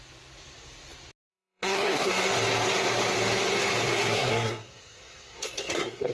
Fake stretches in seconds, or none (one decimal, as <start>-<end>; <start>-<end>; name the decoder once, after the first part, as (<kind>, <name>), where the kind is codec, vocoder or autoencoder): 1.3-2.1 (codec, SNAC); 3.9-6.1

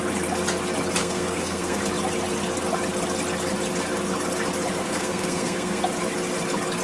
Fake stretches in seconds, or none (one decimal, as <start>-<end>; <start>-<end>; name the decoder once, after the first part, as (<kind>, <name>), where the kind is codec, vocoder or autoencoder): 1.0-1.8 (codec, SNAC); 4.8-5.8

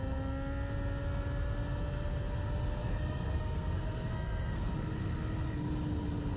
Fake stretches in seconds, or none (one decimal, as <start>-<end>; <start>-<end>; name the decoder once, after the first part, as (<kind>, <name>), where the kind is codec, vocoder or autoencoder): 2.8-4.7 (codec, SNAC)

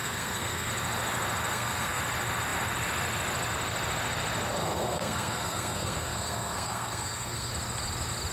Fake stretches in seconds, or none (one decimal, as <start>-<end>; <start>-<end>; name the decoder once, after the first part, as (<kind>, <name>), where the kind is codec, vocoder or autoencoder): 0.0-0.7 (codec, SNAC); 1.5-2.0; 4.6-7.5

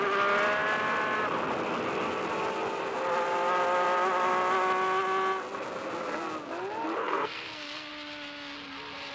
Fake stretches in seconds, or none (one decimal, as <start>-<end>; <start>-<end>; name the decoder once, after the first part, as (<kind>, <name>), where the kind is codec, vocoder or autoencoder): 7.0-7.9 (codec, SNAC)

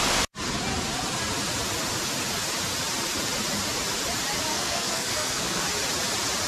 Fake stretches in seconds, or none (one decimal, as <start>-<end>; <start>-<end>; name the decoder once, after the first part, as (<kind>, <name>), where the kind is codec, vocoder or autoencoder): 4.5-5.6 (codec, SNAC)

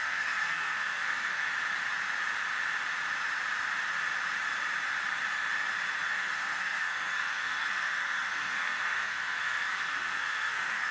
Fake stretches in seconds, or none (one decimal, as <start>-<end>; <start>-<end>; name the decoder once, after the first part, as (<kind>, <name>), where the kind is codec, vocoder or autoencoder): 0.0-1.5 (codec, SNAC); 6.1-10.9

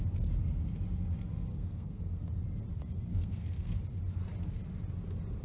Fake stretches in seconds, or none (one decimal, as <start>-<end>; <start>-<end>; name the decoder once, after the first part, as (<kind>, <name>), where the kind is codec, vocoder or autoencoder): 1.5-2.2 (codec, SNAC); 3.1-3.8